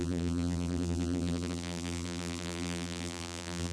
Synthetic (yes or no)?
yes